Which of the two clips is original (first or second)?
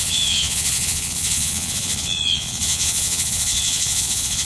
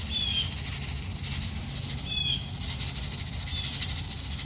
second